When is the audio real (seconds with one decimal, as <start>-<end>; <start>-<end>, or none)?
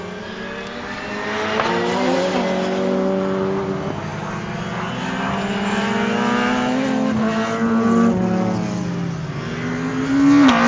0.0-10.7